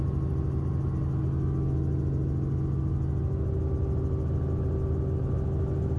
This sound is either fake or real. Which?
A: real